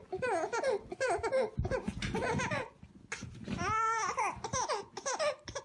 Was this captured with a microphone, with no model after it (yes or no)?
yes